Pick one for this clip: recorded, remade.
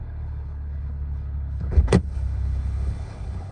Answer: remade